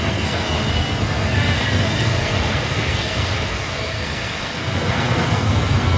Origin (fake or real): fake